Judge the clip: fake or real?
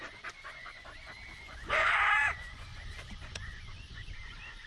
fake